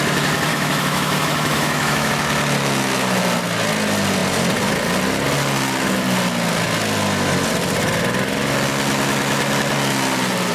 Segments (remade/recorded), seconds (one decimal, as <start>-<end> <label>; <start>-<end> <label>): 0.0-0.5 recorded; 0.5-2.1 remade; 2.1-10.5 recorded